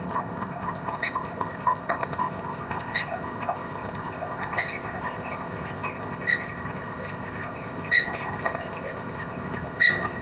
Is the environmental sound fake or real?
fake